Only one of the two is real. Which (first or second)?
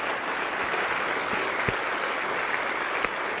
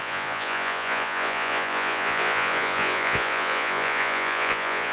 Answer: first